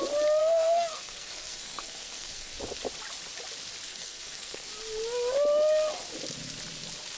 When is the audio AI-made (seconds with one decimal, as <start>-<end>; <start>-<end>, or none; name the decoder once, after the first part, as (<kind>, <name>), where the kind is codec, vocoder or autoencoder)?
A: 0.4-2.6 (codec, SNAC); 3.9-4.7